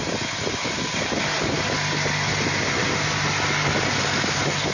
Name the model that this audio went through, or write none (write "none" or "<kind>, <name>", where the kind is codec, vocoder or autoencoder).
none